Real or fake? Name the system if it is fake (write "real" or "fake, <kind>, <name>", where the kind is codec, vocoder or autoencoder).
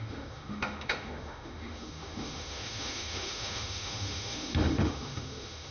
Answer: fake, autoencoder, DAC-VAE